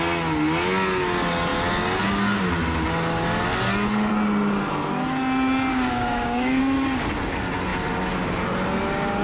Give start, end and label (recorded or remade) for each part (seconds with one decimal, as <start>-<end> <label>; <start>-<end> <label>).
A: 0.0-5.7 recorded; 5.7-6.6 remade; 6.6-9.2 recorded